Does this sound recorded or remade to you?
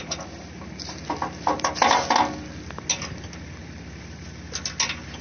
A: recorded